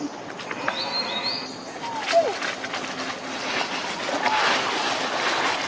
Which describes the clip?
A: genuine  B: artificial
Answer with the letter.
A